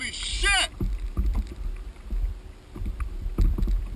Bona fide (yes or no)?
yes